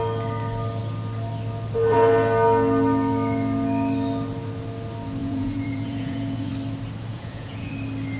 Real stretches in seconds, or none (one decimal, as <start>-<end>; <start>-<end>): 0.0-5.2; 6.5-7.1; 7.7-8.2